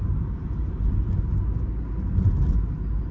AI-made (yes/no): no